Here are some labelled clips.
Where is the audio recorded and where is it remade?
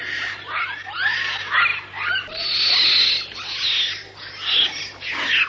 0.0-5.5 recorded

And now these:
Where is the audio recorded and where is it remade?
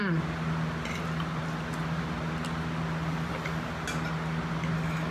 0.0-5.1 recorded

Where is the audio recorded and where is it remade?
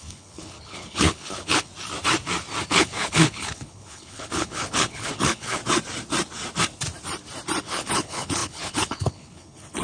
0.0-1.7 remade; 1.7-2.7 recorded; 2.7-5.6 remade; 5.6-7.6 recorded; 7.6-9.8 remade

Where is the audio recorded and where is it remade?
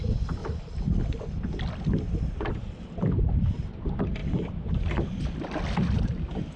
0.0-0.4 remade; 0.4-2.5 recorded; 2.5-4.2 remade; 4.2-6.6 recorded